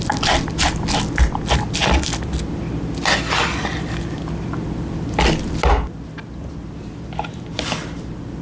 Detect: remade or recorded recorded